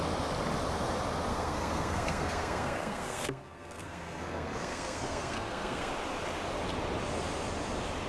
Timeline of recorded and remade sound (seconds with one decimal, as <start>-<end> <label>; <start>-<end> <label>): 0.0-1.3 recorded; 1.3-5.9 remade; 5.9-8.1 recorded